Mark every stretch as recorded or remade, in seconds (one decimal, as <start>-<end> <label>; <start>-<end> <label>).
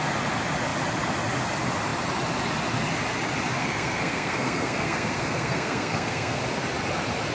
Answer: 0.0-3.6 recorded; 3.6-6.4 remade; 6.4-7.3 recorded